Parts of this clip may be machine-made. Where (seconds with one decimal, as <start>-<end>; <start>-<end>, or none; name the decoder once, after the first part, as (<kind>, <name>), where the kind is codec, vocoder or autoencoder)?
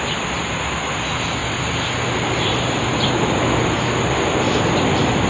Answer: none